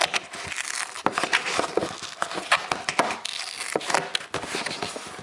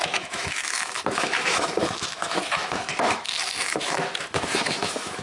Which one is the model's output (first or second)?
second